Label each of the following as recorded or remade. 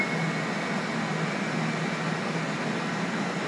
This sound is recorded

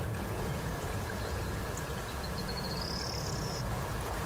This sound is remade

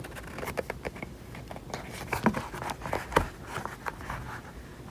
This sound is recorded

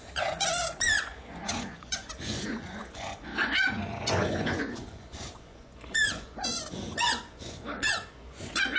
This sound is remade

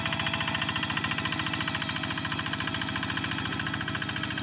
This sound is recorded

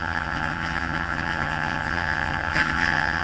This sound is remade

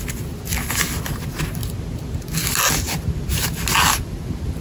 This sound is recorded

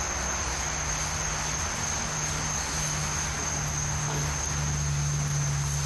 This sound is recorded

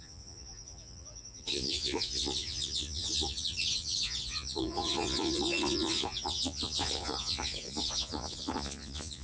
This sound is remade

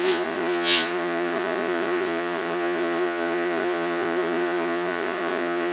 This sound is remade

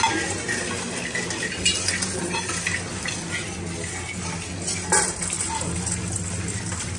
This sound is recorded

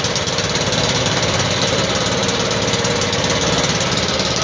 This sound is recorded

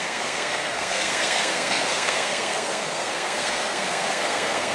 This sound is remade